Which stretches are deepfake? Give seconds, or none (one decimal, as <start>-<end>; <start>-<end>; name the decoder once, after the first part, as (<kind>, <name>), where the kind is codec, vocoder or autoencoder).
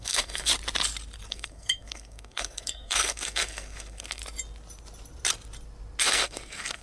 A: 0.0-0.5 (codec, SNAC); 1.3-4.2; 6.0-6.8